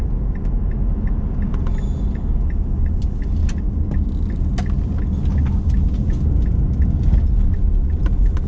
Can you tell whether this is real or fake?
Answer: real